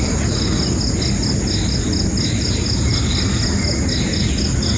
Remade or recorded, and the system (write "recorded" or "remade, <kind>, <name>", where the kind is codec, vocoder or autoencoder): recorded